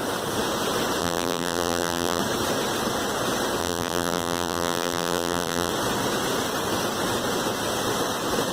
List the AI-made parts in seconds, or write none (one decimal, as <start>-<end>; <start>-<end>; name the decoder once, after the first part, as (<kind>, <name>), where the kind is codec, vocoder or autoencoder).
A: 1.0-2.2 (vocoder, BigVGAN v2); 3.6-5.7